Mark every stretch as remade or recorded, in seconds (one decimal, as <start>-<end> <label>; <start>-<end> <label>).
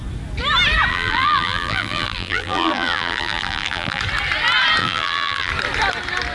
0.0-0.9 recorded; 0.9-4.0 remade; 4.0-4.8 recorded; 4.8-5.5 remade; 5.5-6.3 recorded